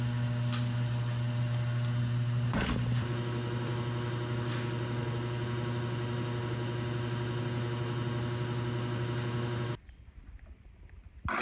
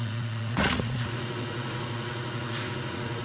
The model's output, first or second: second